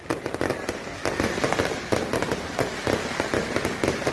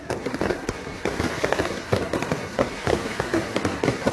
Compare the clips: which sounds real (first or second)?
first